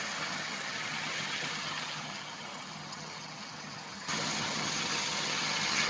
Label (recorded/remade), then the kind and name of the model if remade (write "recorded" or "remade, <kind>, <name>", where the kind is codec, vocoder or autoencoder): remade, vocoder, HiFi-GAN